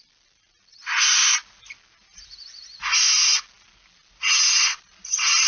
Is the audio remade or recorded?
recorded